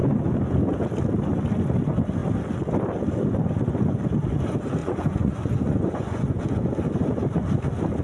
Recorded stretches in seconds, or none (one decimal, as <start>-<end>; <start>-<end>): 0.0-4.8; 6.4-8.0